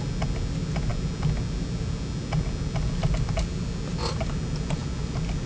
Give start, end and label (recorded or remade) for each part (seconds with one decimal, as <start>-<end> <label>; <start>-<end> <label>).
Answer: 0.0-5.5 recorded

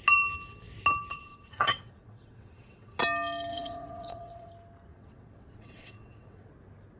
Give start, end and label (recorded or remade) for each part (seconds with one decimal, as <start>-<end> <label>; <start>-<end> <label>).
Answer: 0.0-1.1 recorded; 1.1-3.0 remade; 3.0-3.5 recorded; 3.5-4.5 remade; 4.5-4.9 recorded; 4.9-6.5 remade; 6.5-7.0 recorded

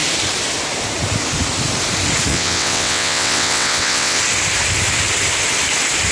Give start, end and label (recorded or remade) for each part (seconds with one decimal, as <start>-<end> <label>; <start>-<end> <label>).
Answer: 0.0-2.3 recorded; 2.3-4.2 remade; 4.2-6.1 recorded

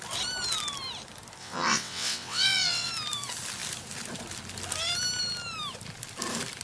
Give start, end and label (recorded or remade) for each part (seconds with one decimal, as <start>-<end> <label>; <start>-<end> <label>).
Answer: 0.0-1.4 recorded; 1.4-2.9 remade; 2.9-6.6 recorded

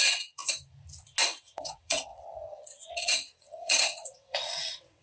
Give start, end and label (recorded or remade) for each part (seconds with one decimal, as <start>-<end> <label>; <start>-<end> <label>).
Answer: 0.0-0.4 remade; 0.4-1.4 recorded; 1.4-5.0 remade

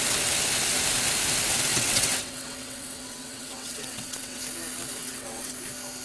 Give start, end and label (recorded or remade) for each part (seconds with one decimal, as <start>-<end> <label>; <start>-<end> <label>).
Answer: 0.0-1.7 recorded; 1.7-4.4 remade; 4.4-5.0 recorded; 5.0-5.5 remade; 5.5-6.0 recorded

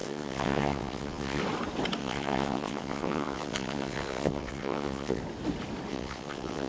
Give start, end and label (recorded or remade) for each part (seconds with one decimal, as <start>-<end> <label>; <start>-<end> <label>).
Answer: 0.0-1.4 remade; 1.4-2.0 recorded; 2.0-5.2 remade; 5.2-5.9 recorded; 5.9-6.7 remade

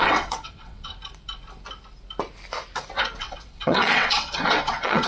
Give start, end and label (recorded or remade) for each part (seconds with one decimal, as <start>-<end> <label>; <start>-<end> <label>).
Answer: 0.0-0.9 remade; 0.9-3.2 recorded; 3.2-5.1 remade